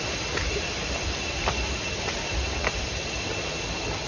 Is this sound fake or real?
real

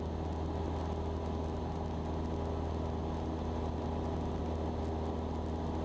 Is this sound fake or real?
real